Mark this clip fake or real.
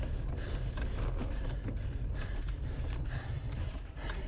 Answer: real